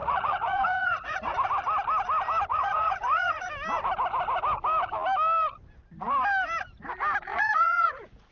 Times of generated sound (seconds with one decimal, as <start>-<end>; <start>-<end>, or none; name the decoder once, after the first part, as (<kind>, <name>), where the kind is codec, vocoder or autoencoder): 0.0-1.5 (vocoder, Vocos); 2.5-3.4; 7.3-8.3